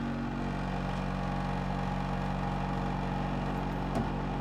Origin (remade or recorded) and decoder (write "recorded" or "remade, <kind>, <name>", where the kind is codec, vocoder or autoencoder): recorded